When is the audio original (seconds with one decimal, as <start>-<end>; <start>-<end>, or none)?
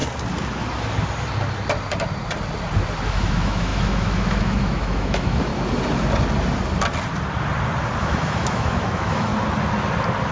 0.0-3.1; 5.5-8.0; 9.3-10.3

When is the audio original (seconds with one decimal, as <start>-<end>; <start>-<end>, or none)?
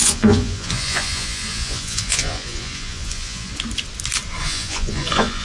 3.5-4.4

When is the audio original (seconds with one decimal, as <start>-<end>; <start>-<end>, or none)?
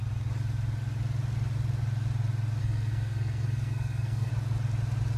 0.0-2.6; 4.3-5.2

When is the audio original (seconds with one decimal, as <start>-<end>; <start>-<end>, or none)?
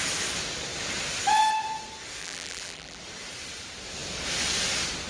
0.0-2.2; 3.0-5.1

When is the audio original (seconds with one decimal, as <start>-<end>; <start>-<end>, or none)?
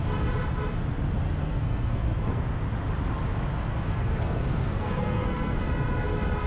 0.0-1.4; 2.4-3.7; 5.6-6.5